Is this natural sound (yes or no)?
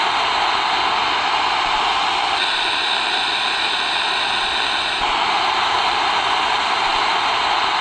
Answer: yes